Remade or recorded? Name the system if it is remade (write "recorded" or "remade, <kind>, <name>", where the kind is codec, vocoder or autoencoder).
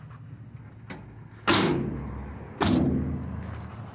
recorded